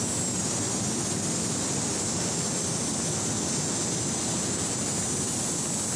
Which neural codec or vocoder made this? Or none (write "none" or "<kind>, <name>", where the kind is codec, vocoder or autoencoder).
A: none